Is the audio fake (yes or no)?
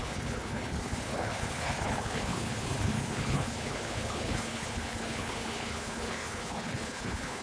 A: yes